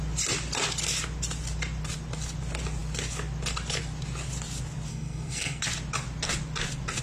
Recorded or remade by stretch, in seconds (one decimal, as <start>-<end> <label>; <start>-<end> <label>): 0.0-4.9 recorded; 4.9-5.6 remade; 5.6-7.0 recorded